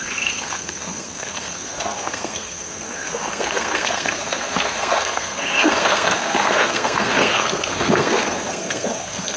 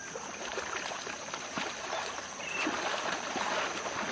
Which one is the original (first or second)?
second